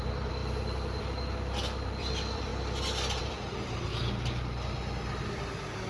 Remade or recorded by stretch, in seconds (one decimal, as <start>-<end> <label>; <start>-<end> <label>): 0.0-0.4 remade; 0.4-1.0 recorded; 1.0-2.5 remade; 2.5-3.2 recorded; 3.2-3.9 remade; 3.9-5.3 recorded; 5.3-5.9 remade